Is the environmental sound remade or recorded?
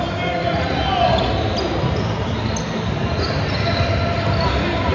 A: recorded